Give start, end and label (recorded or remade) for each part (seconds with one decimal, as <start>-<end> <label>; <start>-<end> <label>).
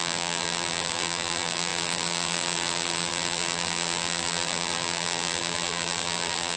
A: 0.0-6.6 remade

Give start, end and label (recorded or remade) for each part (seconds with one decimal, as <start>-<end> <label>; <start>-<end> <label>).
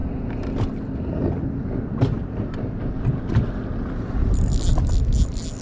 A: 0.0-5.6 recorded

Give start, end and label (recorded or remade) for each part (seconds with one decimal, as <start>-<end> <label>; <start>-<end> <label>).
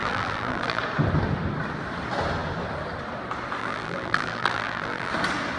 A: 0.0-0.8 remade; 0.8-3.6 recorded; 3.6-5.1 remade; 5.1-5.6 recorded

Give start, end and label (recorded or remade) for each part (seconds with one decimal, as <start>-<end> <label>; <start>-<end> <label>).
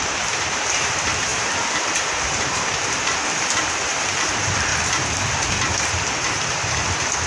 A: 0.0-4.7 remade; 4.7-6.3 recorded; 6.3-7.3 remade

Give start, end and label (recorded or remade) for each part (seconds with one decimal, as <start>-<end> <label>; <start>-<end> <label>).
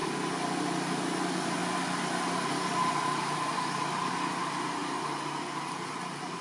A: 0.0-4.8 recorded; 4.8-5.4 remade; 5.4-6.4 recorded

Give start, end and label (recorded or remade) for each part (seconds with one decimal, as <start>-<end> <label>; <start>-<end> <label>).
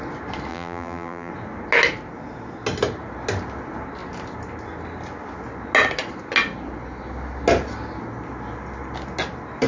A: 0.0-0.5 recorded; 0.5-1.3 remade; 1.3-9.7 recorded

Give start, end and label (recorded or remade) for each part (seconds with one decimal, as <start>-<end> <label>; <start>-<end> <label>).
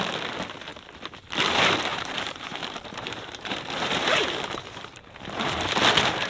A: 0.0-1.9 recorded; 1.9-5.4 remade; 5.4-6.3 recorded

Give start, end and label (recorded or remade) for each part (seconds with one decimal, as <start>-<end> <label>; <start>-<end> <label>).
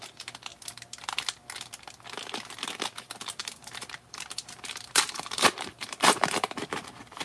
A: 0.0-3.4 recorded; 3.4-6.8 remade; 6.8-7.2 recorded